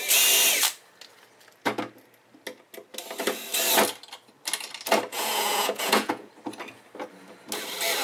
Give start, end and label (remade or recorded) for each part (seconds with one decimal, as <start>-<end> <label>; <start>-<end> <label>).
0.0-5.1 recorded; 5.1-6.3 remade; 6.3-8.0 recorded